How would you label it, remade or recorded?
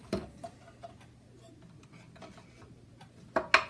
recorded